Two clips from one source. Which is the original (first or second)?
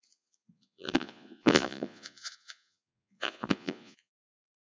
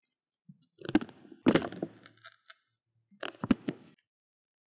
second